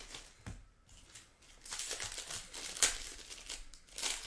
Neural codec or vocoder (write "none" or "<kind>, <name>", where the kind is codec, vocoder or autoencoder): none